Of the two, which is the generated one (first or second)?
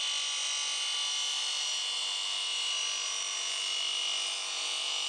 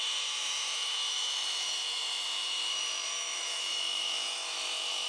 second